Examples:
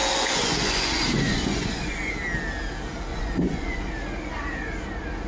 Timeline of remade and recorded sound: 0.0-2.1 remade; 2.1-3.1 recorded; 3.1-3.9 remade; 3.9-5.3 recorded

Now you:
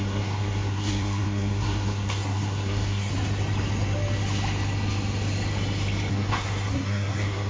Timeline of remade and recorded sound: 0.0-3.1 remade; 3.1-6.1 recorded; 6.1-7.5 remade

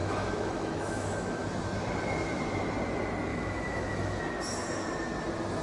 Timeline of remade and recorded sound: 0.0-1.4 remade; 1.4-3.3 recorded; 3.3-4.2 remade; 4.2-5.6 recorded

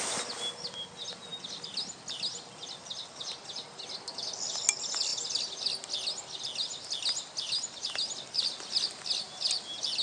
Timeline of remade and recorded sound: 0.0-10.0 recorded

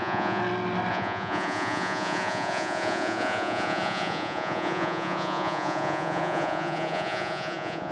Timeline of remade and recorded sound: 0.0-0.4 remade; 0.4-0.9 recorded; 0.9-7.9 remade